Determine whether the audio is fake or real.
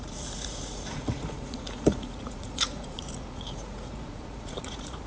fake